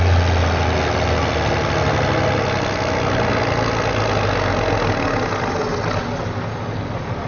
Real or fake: real